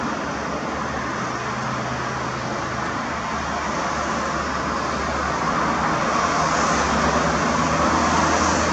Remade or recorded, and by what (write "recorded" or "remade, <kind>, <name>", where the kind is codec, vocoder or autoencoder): recorded